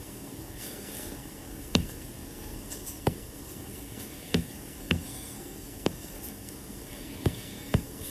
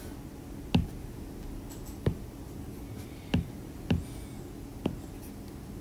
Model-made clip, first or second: first